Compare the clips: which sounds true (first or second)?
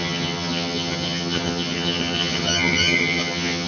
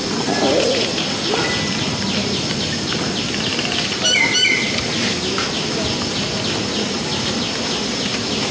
second